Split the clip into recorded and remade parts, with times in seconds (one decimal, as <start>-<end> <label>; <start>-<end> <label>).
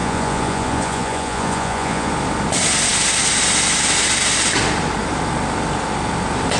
0.0-2.1 remade; 2.1-6.6 recorded